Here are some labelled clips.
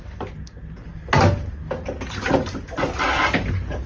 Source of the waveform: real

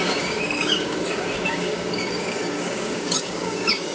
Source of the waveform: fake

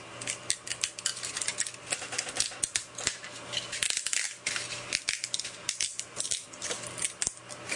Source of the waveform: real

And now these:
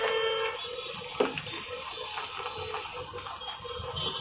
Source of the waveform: real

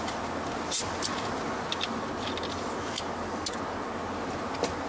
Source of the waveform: real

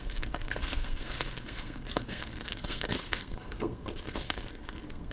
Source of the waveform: fake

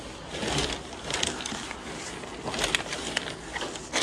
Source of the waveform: real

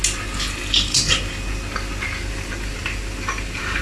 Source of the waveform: real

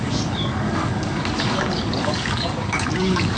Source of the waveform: fake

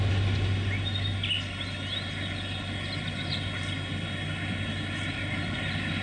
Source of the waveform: real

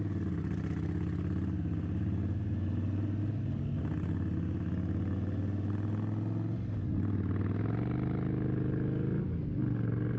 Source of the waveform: real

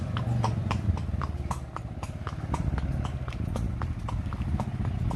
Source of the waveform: real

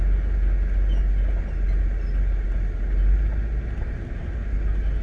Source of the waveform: real